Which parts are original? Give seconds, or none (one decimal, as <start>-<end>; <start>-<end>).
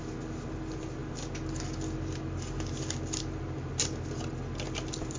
0.0-5.2